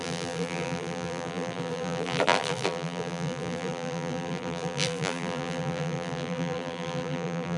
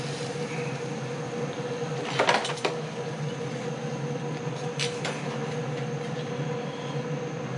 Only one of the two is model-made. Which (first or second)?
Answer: first